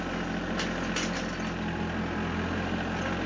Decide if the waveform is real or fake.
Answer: real